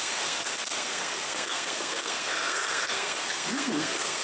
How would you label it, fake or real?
fake